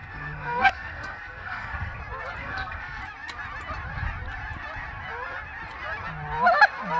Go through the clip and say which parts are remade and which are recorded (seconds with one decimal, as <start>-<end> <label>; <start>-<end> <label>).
0.0-2.0 remade; 2.0-2.4 recorded; 2.4-3.0 remade; 3.0-7.0 recorded